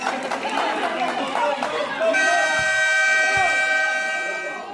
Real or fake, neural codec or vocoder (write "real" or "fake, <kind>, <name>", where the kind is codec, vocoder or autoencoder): real